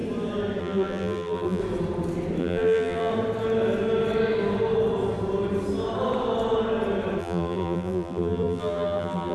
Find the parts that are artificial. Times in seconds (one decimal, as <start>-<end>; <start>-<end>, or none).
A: 0.6-1.6; 2.4-3.1; 7.2-9.3